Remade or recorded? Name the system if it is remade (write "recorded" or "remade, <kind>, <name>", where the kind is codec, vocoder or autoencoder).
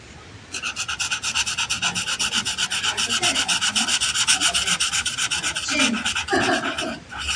recorded